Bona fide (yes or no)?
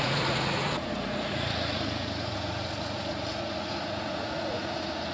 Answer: no